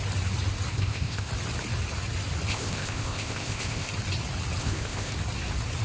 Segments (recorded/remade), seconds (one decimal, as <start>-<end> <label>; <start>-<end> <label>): 0.0-0.7 recorded; 0.7-1.3 remade; 1.3-2.5 recorded; 2.5-3.9 remade; 3.9-4.6 recorded; 4.6-5.1 remade; 5.1-5.8 recorded